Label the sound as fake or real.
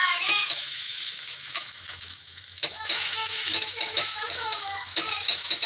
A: fake